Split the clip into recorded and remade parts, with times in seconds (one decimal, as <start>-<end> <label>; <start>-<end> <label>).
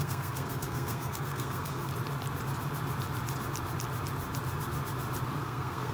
0.0-1.9 remade; 1.9-5.4 recorded; 5.4-5.9 remade